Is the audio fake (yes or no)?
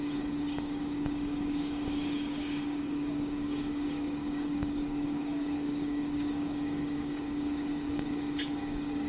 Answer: yes